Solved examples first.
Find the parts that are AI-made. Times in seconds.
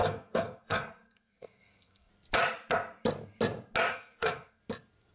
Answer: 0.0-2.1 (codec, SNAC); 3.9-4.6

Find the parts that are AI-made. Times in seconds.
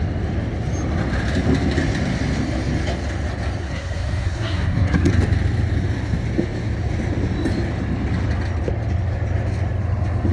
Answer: 3.6-5.1 (codec, SNAC)